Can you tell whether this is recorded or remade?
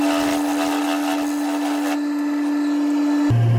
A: recorded